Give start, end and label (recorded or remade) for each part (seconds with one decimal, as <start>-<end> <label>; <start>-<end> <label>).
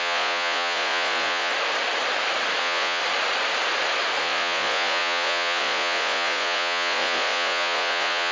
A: 0.0-1.5 remade; 1.5-2.6 recorded; 2.6-3.0 remade; 3.0-4.2 recorded; 4.2-8.3 remade